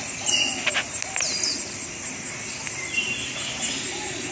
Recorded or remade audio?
recorded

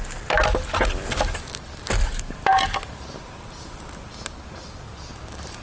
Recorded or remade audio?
recorded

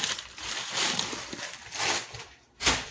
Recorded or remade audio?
recorded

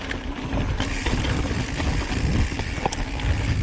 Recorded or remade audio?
recorded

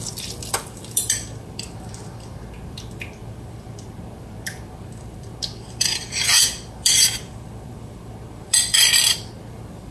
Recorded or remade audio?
remade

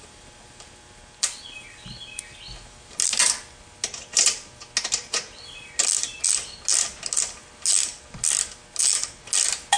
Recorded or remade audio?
recorded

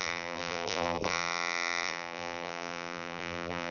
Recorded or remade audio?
remade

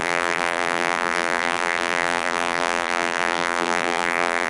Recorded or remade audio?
remade